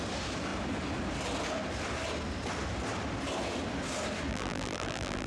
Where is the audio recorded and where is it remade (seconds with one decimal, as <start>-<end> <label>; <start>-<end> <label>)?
0.0-4.3 recorded; 4.3-5.3 remade